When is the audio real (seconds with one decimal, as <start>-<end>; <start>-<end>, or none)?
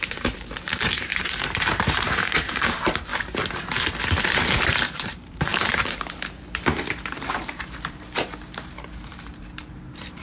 3.1-4.2